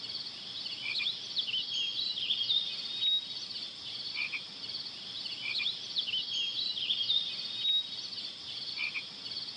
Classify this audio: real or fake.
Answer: real